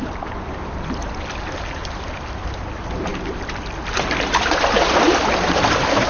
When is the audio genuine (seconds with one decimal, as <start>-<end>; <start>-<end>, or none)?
0.0-6.1